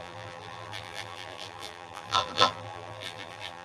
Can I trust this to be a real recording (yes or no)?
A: no